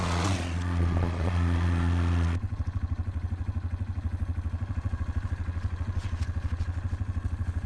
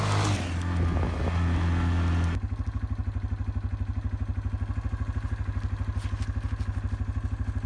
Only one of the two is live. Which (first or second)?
second